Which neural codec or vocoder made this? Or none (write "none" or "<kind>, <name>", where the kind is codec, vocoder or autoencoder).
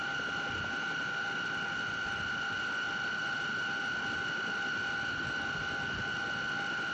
none